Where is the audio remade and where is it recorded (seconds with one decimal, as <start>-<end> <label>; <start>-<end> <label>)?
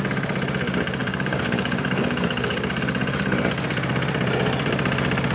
0.0-1.0 recorded; 1.0-2.8 remade; 2.8-5.3 recorded